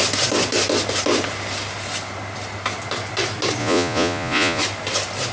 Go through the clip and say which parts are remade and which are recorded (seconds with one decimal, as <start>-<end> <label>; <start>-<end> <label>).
0.0-3.6 recorded; 3.6-4.6 remade; 4.6-5.3 recorded